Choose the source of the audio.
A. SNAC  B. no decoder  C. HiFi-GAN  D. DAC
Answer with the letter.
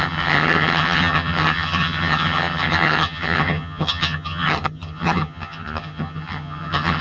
C